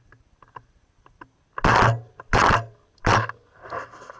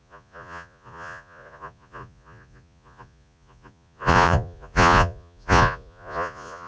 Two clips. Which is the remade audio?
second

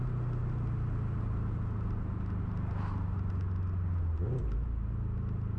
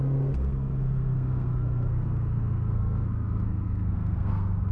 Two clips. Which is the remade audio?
second